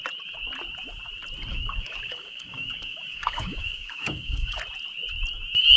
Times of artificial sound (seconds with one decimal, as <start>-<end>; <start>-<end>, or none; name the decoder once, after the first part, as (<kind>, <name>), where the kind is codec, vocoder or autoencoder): 1.5-4.6 (codec, DAC)